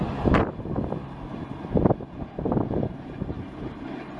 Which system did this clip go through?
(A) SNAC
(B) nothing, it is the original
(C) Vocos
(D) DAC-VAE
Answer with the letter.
B